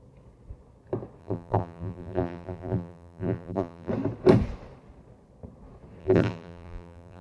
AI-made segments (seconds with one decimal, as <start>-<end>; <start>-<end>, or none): 1.2-3.9; 6.0-7.2